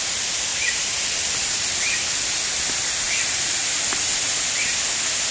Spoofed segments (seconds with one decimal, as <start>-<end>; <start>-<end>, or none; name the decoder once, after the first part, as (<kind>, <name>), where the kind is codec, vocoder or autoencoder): 0.5-1.1 (vocoder, BigVGAN v2)